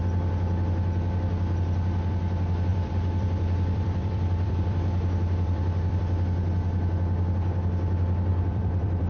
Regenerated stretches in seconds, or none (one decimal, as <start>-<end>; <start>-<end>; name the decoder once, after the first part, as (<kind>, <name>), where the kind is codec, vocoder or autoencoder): 2.7-6.0 (vocoder, BigVGAN v2); 8.3-9.1